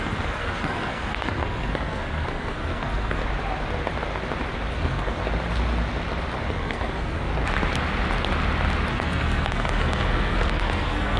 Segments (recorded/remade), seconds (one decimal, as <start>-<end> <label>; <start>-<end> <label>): 0.0-3.2 remade; 3.2-4.7 recorded; 4.7-5.2 remade; 5.2-6.5 recorded; 6.5-7.3 remade; 7.3-8.9 recorded; 8.9-11.2 remade